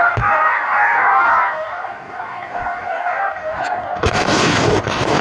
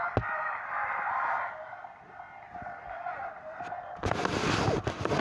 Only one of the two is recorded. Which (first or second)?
second